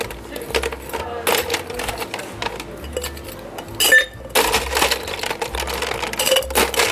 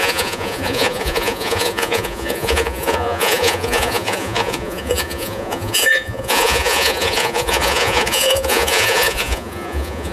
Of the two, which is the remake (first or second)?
second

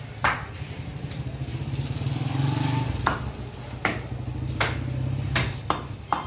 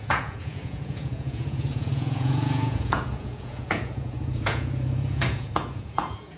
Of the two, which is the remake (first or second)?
second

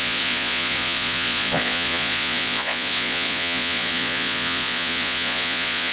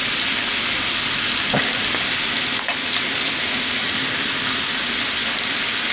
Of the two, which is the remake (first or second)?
first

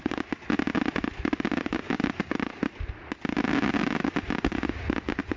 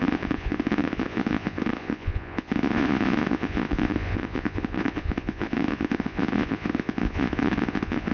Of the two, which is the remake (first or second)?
second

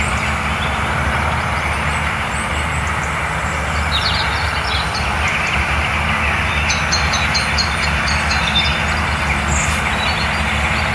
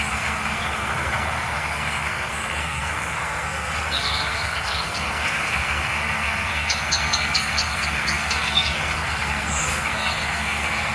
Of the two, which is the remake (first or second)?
second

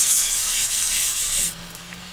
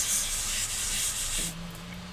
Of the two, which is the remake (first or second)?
first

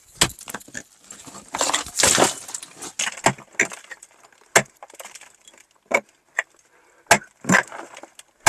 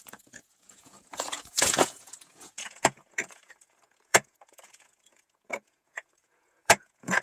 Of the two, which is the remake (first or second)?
second